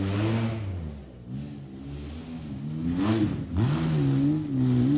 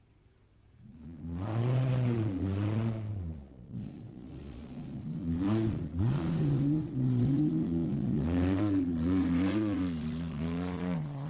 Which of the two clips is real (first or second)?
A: first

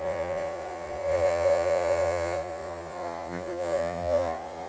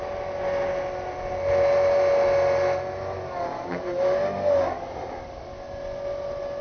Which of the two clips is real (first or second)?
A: second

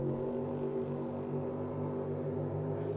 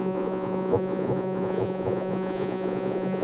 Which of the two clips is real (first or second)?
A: first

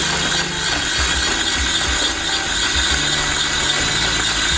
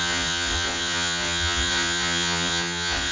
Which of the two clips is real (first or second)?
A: first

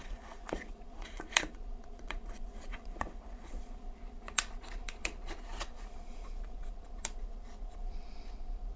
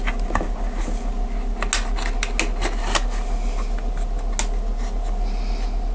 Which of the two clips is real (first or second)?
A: second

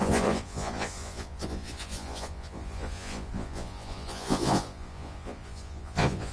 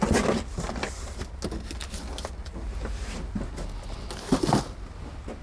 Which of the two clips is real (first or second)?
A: second